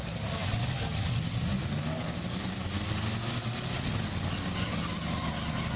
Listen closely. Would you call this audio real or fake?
real